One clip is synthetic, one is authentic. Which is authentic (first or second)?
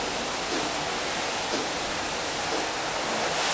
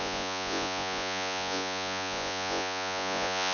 first